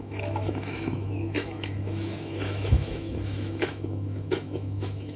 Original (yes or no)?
no